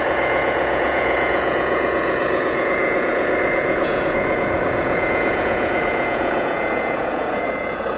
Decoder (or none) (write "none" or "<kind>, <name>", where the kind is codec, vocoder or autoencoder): vocoder, Vocos